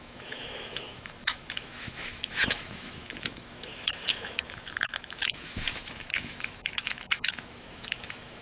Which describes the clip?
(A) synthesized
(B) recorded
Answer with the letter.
A